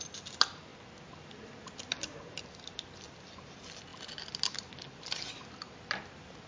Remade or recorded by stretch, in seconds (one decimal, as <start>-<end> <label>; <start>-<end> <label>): 0.0-6.5 recorded